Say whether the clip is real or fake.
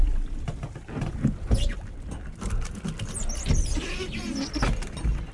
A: real